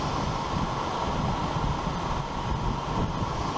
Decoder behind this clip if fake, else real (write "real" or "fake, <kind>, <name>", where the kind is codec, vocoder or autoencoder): real